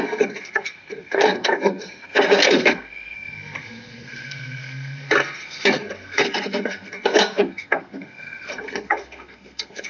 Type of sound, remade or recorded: remade